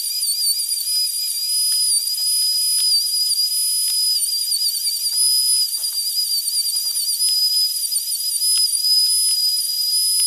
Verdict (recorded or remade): recorded